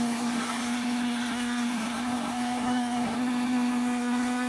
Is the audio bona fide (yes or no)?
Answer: no